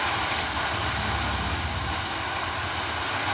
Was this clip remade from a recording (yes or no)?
no